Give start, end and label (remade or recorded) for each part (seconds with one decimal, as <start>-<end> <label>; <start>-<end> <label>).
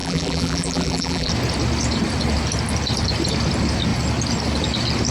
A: 0.0-1.3 remade; 1.3-5.1 recorded